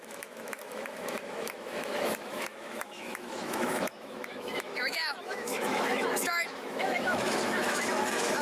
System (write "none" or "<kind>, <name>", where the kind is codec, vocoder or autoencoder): autoencoder, DAC-VAE